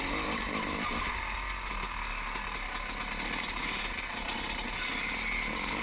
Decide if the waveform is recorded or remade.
recorded